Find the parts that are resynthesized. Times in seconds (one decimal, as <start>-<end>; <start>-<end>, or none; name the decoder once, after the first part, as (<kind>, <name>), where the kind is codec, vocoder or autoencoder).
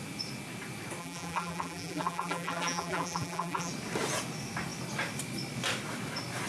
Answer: 1.0-3.7 (vocoder, BigVGAN v2)